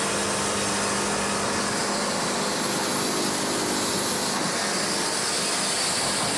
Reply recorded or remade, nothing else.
recorded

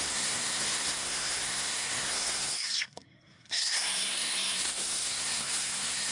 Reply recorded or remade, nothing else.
remade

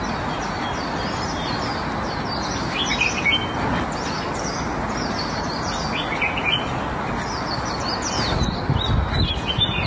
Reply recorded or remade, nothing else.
recorded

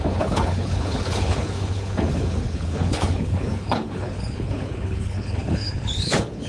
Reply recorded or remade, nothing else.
remade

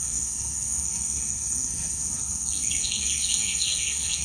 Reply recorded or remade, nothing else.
remade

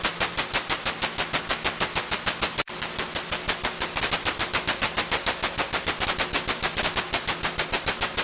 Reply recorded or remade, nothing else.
recorded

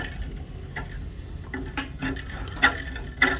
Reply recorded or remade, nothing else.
recorded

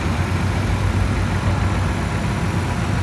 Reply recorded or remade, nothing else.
recorded